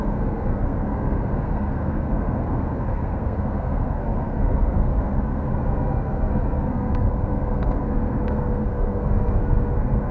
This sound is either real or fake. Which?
fake